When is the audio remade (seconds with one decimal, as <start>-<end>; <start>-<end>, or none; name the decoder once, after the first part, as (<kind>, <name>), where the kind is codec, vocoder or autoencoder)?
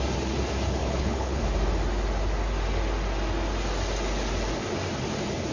0.8-1.4 (codec, HILCodec)